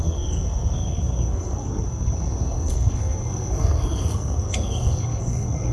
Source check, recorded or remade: remade